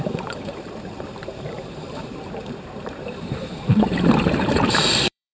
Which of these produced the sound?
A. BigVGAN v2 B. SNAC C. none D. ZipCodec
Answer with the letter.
A